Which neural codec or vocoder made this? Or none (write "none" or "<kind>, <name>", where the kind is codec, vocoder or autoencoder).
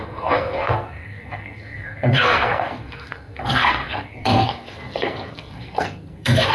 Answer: codec, SNAC